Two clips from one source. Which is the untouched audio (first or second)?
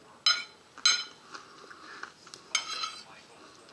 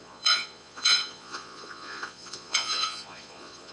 first